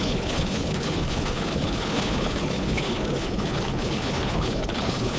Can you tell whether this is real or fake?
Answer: fake